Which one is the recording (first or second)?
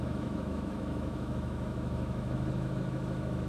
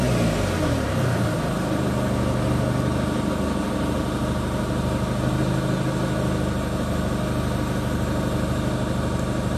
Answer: second